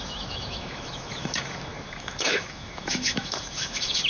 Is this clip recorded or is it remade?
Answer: remade